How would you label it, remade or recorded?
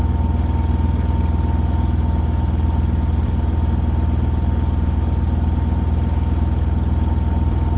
recorded